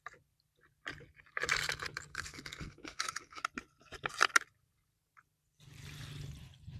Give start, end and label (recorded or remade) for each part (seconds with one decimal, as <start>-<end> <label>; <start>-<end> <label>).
0.0-2.1 recorded; 2.1-3.4 remade; 3.4-6.8 recorded